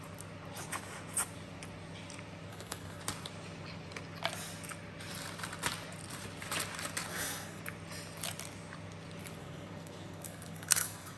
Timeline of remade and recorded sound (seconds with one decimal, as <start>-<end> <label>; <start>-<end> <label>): 0.0-2.5 recorded; 2.5-3.0 remade; 3.0-7.1 recorded; 7.1-7.6 remade; 7.6-9.4 recorded; 9.4-11.2 remade